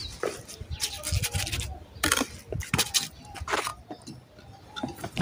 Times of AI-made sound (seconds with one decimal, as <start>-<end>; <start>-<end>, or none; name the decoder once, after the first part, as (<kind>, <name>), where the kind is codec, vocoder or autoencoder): none